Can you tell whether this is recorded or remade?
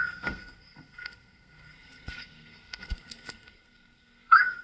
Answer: remade